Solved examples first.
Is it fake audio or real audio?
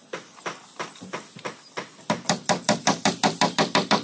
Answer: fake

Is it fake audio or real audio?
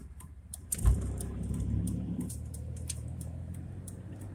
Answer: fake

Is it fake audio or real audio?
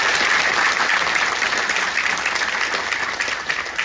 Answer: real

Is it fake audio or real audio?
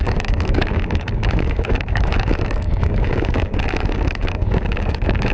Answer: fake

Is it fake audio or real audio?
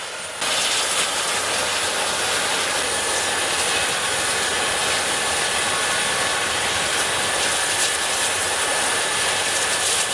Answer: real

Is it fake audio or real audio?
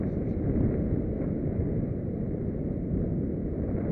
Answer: real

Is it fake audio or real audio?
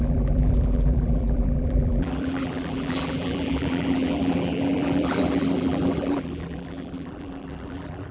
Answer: fake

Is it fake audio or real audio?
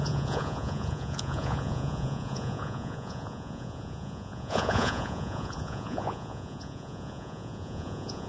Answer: fake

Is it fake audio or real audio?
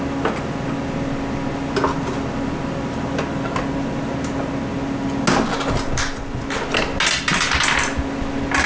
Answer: real